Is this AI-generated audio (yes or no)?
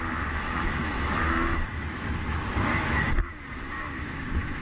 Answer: yes